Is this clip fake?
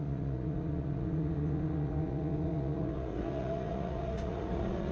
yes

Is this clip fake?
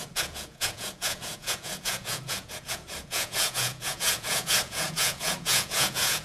yes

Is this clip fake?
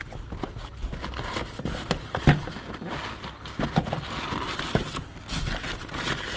no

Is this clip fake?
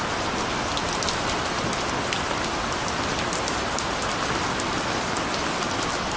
no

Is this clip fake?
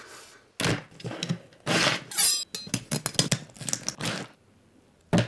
no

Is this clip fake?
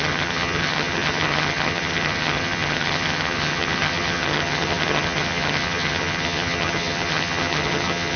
yes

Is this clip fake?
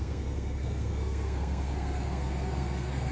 yes